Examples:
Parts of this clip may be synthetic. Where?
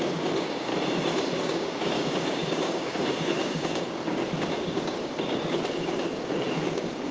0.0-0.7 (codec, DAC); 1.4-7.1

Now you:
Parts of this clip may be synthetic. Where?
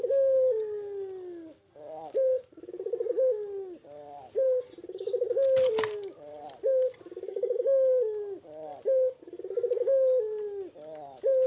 7.3-8.0 (codec, DAC)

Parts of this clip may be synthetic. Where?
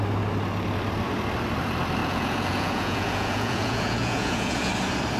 2.0-4.7 (vocoder, Vocos)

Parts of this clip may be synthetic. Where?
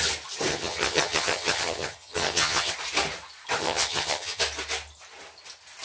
0.5-2.7 (vocoder, HiFi-GAN); 3.6-4.4